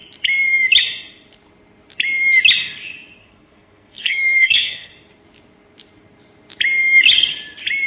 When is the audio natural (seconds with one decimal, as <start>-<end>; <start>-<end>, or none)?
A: 0.0-3.2; 4.9-7.9